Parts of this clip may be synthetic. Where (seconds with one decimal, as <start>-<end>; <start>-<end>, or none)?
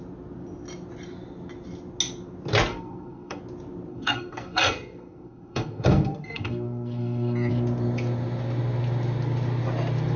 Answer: 2.7-3.4; 3.9-7.5